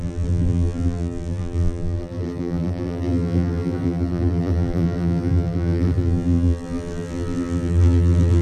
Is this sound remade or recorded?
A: remade